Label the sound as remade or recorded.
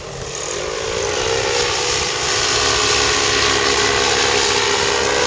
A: recorded